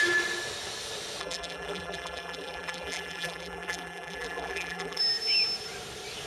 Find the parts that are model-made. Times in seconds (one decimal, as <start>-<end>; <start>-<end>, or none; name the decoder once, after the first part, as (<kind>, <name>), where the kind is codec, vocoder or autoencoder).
1.2-5.0 (vocoder, BigVGAN v2)